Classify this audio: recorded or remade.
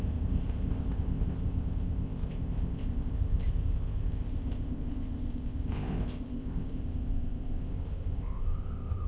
remade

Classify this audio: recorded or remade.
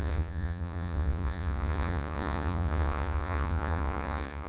remade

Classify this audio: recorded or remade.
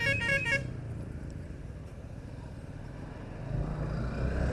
recorded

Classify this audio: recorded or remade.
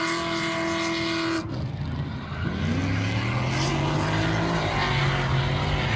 recorded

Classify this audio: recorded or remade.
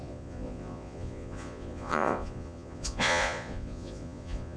remade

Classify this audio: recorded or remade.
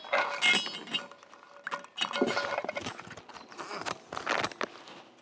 recorded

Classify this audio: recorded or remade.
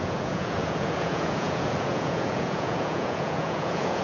remade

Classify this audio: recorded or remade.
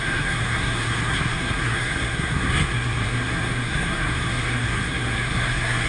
remade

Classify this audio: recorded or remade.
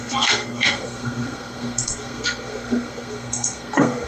remade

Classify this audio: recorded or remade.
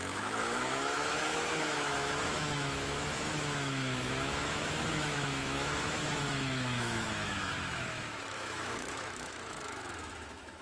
remade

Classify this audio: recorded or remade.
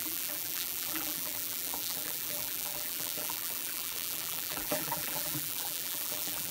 remade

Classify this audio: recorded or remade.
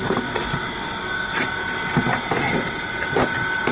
recorded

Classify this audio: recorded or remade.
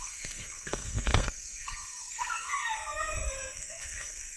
remade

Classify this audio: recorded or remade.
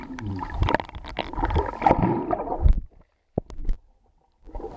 recorded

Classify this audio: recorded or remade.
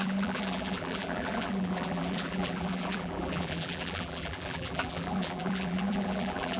remade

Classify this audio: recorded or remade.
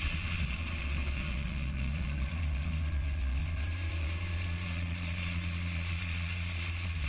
remade